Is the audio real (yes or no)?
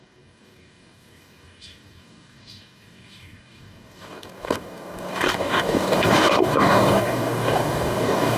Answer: no